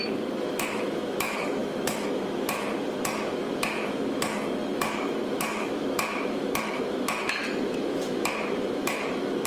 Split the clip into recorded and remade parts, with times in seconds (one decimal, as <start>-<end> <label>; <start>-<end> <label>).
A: 0.0-9.5 remade